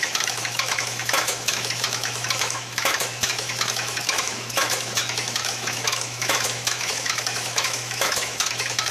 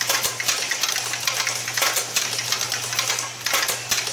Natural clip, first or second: second